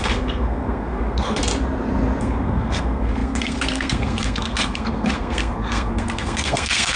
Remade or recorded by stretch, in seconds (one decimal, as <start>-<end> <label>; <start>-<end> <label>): 0.0-1.4 remade; 1.4-2.2 recorded; 2.2-7.0 remade